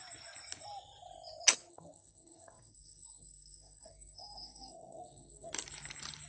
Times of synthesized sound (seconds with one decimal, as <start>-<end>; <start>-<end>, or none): 1.7-5.5